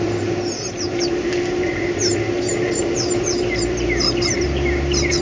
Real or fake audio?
fake